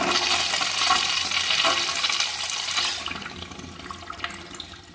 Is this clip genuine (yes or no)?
yes